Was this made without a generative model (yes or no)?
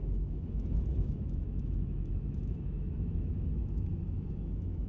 no